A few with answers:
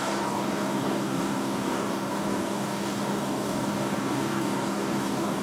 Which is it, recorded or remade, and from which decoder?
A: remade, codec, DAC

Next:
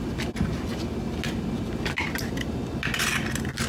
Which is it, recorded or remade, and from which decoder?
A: recorded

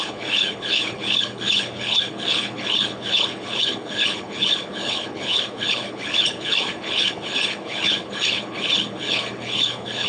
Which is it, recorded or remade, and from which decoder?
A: remade, codec, HILCodec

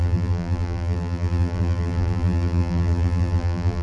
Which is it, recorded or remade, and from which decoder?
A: remade, vocoder, BigVGAN v2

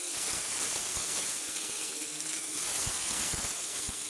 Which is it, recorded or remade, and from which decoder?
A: remade, codec, SNAC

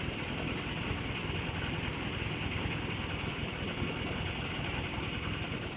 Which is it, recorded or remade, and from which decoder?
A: recorded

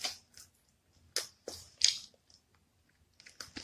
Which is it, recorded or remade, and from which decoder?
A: recorded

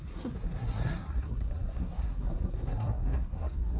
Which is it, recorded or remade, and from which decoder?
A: remade, codec, SNAC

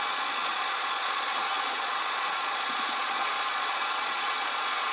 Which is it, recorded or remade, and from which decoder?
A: remade, vocoder, Vocos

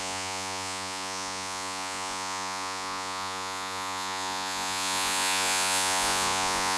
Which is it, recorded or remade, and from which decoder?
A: remade, vocoder, Vocos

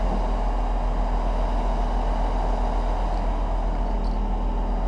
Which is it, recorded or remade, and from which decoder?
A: recorded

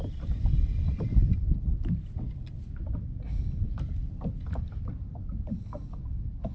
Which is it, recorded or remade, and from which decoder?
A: recorded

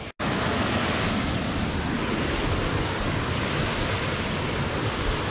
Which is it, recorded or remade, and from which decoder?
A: recorded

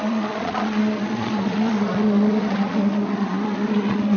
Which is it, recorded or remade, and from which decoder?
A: remade, vocoder, Vocos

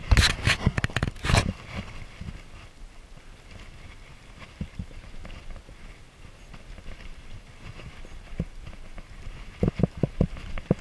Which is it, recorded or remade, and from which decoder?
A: recorded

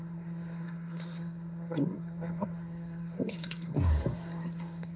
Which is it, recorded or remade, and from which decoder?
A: remade, codec, SNAC